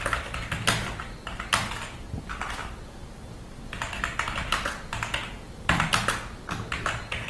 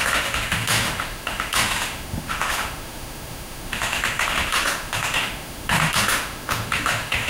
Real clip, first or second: first